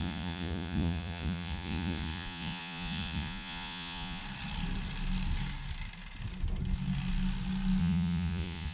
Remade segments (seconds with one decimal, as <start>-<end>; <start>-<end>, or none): 0.0-4.2; 7.8-8.7